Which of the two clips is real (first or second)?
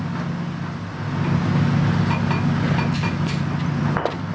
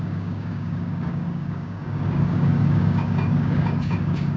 first